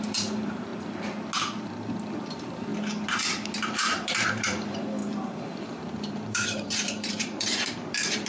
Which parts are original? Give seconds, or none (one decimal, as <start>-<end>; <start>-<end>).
0.7-2.2; 2.7-3.6